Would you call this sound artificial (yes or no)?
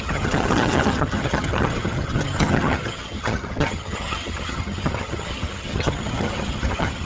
yes